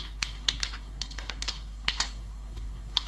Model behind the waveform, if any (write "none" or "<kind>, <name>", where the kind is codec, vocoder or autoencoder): codec, SNAC